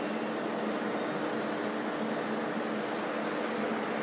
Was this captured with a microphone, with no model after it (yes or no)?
yes